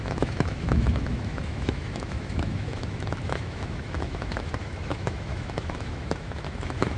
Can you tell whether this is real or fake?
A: fake